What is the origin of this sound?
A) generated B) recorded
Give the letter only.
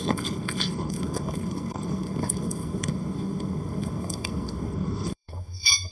A